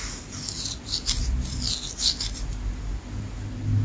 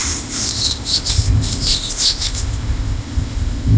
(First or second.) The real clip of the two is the first